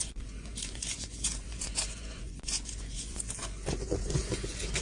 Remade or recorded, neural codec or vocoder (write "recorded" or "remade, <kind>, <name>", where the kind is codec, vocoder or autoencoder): remade, vocoder, Vocos